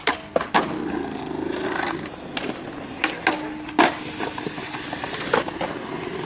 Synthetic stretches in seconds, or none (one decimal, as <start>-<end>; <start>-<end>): none